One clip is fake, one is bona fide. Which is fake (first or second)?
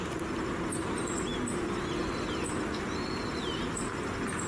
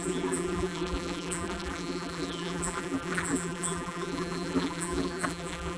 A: second